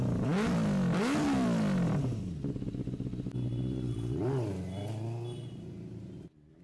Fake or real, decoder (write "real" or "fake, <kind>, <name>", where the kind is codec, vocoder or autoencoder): real